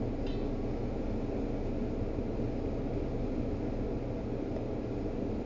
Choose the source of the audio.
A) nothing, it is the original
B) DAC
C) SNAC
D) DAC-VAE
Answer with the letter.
A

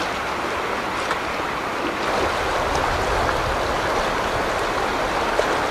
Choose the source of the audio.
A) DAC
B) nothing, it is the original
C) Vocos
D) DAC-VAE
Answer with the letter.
B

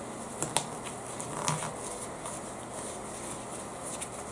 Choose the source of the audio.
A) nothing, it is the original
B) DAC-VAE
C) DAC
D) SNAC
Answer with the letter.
A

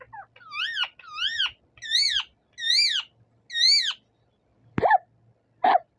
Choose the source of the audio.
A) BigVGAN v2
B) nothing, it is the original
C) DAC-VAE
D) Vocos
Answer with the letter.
B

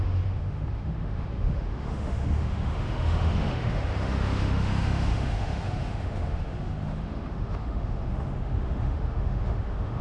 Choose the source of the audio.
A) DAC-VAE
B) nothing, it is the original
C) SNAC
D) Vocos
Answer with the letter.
A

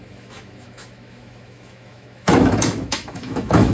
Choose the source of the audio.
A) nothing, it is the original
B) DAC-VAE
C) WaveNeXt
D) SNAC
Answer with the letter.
B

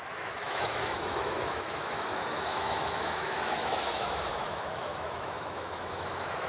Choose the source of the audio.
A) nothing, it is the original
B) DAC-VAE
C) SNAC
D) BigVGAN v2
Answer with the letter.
B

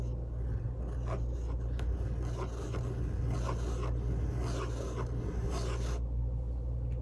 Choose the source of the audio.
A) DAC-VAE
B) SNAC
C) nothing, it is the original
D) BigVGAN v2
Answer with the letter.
C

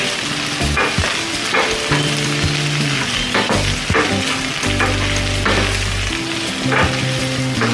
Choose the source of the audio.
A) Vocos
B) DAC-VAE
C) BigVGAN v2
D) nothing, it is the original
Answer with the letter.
D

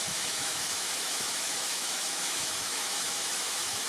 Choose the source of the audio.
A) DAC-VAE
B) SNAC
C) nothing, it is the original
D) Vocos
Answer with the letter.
A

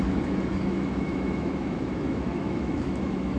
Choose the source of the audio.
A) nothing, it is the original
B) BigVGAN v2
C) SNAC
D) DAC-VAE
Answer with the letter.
D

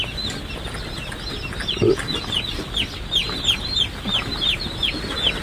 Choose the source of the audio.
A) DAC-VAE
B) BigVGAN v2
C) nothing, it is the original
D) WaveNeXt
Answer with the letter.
C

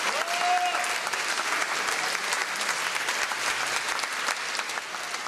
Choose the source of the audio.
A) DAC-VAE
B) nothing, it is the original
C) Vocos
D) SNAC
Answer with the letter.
B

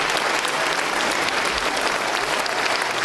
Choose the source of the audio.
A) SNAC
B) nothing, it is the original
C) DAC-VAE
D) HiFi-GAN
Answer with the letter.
B